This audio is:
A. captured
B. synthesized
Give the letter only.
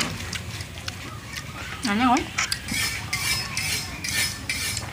A